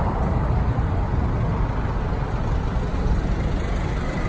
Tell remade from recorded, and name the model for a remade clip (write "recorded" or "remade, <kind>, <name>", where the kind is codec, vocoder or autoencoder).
recorded